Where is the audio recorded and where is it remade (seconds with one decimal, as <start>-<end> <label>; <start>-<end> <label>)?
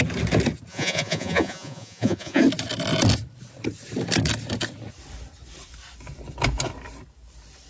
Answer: 0.0-0.7 recorded; 0.7-2.4 remade; 2.4-7.7 recorded